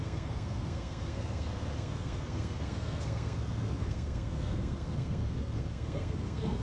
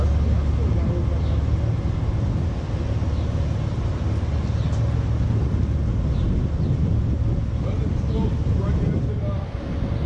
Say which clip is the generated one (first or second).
first